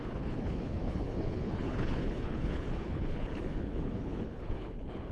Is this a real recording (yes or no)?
no